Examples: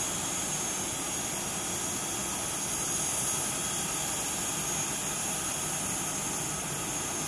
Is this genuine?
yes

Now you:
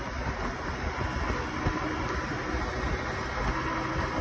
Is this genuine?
yes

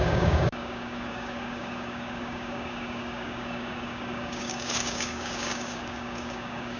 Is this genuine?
no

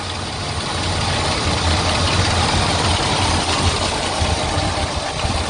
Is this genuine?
yes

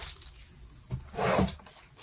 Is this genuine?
yes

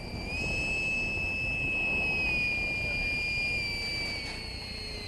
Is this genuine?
yes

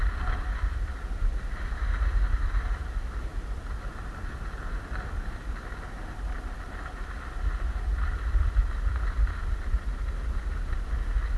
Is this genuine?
yes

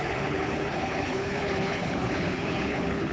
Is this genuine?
no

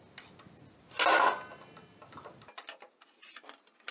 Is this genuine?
yes